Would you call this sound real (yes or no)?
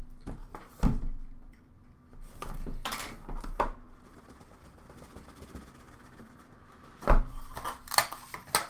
yes